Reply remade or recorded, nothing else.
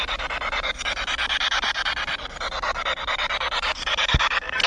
recorded